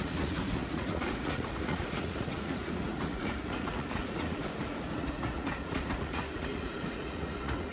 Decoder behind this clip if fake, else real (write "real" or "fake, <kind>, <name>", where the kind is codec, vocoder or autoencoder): fake, vocoder, Vocos